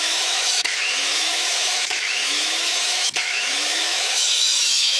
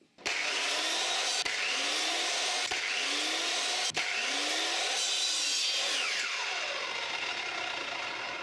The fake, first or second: first